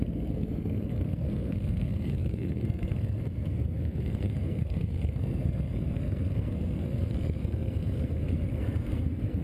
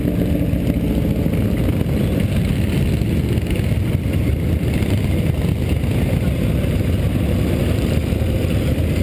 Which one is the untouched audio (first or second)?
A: second